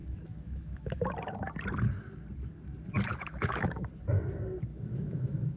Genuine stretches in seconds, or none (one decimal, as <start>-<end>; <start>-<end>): 1.1-3.1; 3.9-4.7